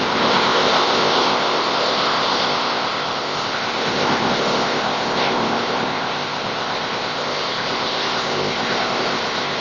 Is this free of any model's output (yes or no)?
no